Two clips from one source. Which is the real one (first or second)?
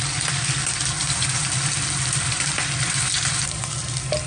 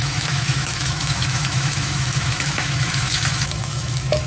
first